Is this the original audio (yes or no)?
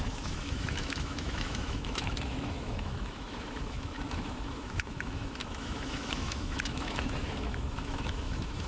no